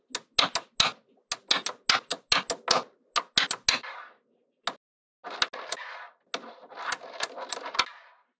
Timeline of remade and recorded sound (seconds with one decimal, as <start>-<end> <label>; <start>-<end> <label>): 0.0-8.4 recorded